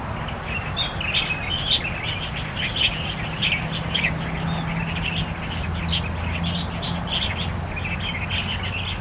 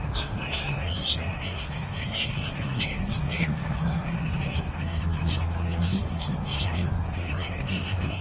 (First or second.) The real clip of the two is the first